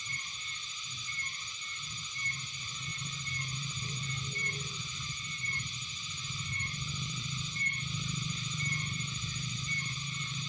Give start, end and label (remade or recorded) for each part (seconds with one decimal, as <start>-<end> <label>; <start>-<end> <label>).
0.0-10.5 remade